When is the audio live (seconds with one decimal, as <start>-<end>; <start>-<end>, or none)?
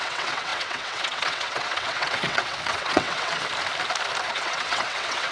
3.4-4.3